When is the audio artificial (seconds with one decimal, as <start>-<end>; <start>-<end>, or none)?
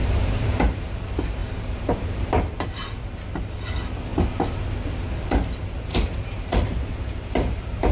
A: 0.0-0.6; 1.4-2.4; 5.9-7.9